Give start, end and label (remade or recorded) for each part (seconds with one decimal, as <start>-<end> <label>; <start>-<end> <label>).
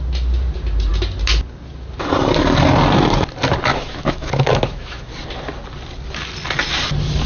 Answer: 0.0-3.7 recorded; 3.7-5.1 remade; 5.1-7.3 recorded